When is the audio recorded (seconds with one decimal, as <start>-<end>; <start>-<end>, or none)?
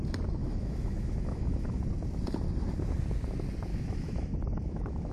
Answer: 0.0-0.4; 1.8-3.7